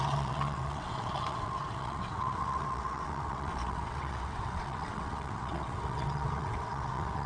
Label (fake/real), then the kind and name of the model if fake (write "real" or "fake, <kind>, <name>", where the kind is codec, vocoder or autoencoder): fake, vocoder, WaveNeXt